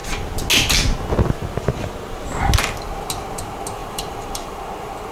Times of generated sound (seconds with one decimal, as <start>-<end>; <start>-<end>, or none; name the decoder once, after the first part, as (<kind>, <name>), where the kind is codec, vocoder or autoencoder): 3.8-4.6 (vocoder, BigVGAN v2)